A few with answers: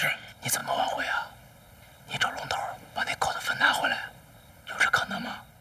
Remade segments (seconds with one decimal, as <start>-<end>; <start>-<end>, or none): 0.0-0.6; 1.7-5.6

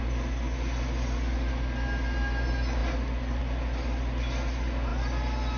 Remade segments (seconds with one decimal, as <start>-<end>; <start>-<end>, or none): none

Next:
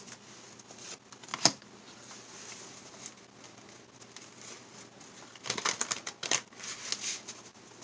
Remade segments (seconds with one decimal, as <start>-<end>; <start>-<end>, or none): none

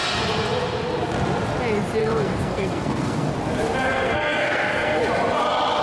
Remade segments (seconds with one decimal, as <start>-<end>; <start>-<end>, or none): 2.0-3.3; 3.9-5.0

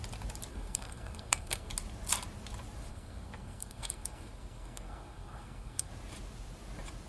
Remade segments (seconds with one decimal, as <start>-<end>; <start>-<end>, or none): 0.5-1.7; 2.9-5.9

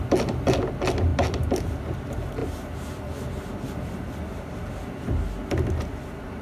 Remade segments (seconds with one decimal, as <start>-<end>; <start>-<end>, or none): 1.1-1.8

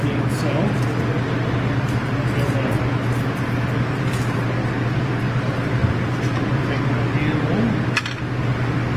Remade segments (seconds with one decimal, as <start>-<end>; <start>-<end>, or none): none

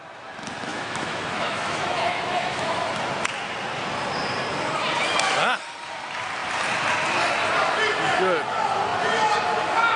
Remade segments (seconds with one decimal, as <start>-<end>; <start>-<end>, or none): 0.7-2.9